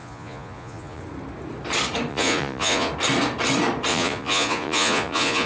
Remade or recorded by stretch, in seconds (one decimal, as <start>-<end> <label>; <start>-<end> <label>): 0.0-1.0 remade; 1.0-2.1 recorded; 2.1-2.9 remade; 2.9-3.9 recorded; 3.9-5.5 remade